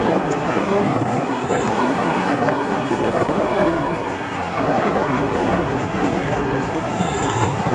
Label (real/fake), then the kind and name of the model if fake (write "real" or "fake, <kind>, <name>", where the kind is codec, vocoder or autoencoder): fake, codec, SNAC